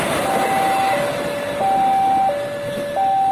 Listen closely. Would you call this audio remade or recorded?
recorded